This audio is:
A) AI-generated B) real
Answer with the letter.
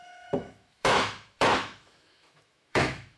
A